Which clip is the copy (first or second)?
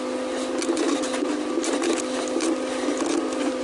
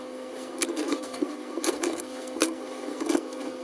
second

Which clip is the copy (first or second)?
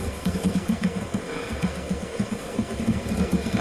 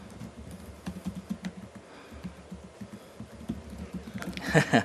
first